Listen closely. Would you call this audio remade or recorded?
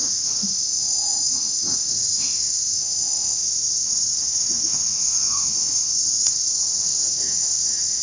remade